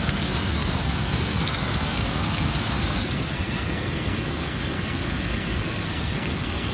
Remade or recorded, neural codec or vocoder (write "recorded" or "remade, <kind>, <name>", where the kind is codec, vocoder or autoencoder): remade, codec, SNAC